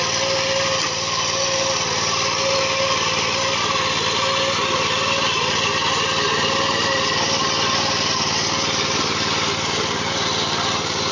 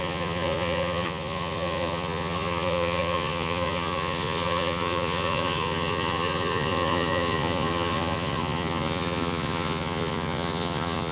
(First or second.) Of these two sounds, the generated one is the second